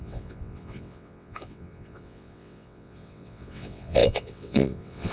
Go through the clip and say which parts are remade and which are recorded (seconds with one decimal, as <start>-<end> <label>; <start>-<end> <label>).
0.0-5.1 remade